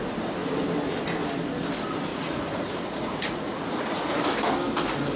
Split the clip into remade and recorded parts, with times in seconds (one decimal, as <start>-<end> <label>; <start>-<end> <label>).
0.0-2.1 recorded; 2.1-4.2 remade; 4.2-5.2 recorded